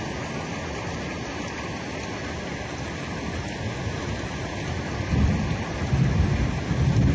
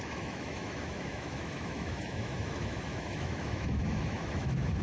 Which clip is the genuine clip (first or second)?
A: first